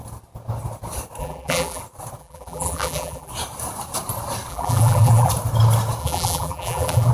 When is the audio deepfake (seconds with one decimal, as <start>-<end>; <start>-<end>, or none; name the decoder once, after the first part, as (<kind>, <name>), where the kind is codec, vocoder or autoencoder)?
1.2-1.8 (vocoder, BigVGAN v2); 2.2-3.3; 4.5-5.3; 6.0-7.1